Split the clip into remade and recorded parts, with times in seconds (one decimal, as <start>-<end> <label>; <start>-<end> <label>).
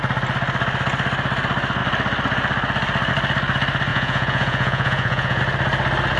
0.0-3.9 recorded; 3.9-5.4 remade; 5.4-6.2 recorded